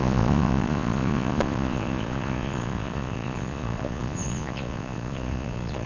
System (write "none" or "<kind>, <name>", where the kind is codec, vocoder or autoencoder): vocoder, Vocos